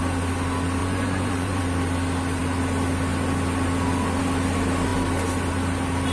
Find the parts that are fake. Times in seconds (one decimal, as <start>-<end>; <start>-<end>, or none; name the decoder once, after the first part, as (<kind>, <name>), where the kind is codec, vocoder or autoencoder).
0.8-1.6 (vocoder, Vocos)